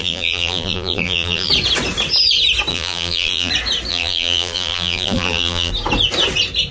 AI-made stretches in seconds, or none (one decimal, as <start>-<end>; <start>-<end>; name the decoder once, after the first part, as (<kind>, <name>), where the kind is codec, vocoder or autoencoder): 0.0-1.5 (vocoder, BigVGAN v2); 2.7-3.5; 3.9-5.7